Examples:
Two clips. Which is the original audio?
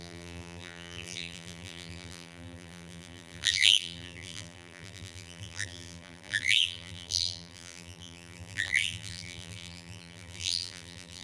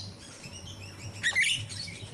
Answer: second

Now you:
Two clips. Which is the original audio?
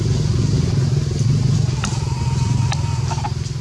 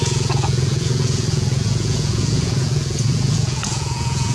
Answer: first